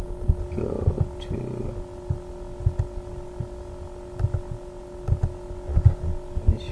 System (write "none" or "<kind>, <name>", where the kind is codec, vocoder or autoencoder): none